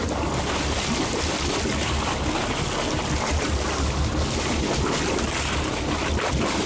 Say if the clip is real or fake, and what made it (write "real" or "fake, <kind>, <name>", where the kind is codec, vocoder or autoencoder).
real